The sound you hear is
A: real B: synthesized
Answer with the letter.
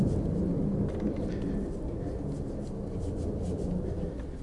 A